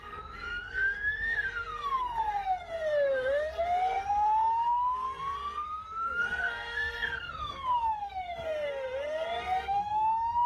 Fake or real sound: fake